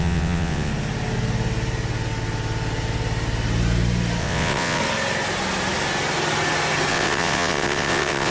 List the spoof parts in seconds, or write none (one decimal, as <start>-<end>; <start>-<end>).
0.0-0.7; 4.2-4.8; 6.9-8.3